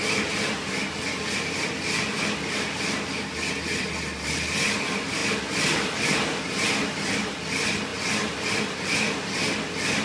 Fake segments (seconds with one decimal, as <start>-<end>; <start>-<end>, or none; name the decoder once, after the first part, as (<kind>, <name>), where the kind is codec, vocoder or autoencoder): none